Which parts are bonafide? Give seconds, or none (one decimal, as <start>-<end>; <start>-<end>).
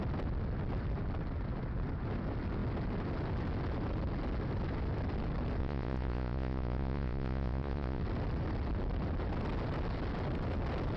0.0-5.6; 8.0-11.0